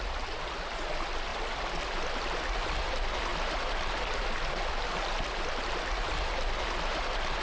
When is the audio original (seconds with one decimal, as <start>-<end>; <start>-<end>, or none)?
0.0-7.4